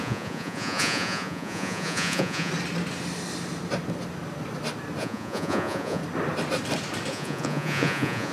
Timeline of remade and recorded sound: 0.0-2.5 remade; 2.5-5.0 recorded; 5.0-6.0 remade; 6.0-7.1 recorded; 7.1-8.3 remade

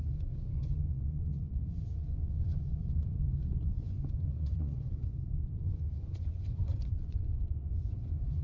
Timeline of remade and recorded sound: 0.0-8.4 remade

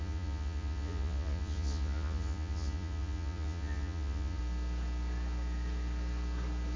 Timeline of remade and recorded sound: 0.0-4.4 remade; 4.4-6.8 recorded

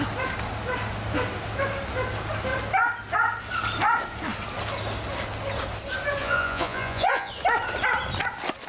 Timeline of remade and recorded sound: 0.0-6.2 recorded; 6.2-7.3 remade; 7.3-8.7 recorded